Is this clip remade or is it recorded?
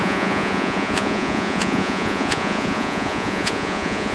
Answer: remade